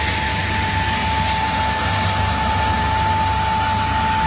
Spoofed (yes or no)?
no